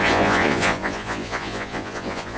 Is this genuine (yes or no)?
no